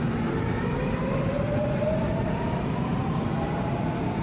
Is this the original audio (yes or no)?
yes